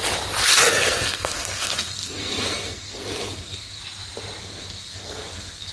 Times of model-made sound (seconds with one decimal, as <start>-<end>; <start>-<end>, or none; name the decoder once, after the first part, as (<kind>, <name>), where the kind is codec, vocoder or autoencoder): 0.4-3.8 (codec, SNAC); 4.4-5.7

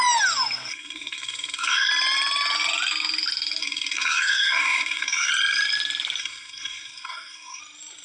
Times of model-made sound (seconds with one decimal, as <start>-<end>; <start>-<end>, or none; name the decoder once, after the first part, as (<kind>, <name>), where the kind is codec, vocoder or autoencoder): 0.7-1.9 (codec, SNAC); 3.6-5.3; 6.2-7.6

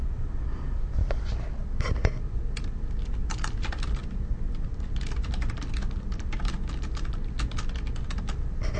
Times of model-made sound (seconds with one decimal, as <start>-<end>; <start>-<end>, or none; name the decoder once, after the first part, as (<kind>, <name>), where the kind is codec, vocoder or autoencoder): 0.0-1.0 (vocoder, BigVGAN v2); 3.0-8.8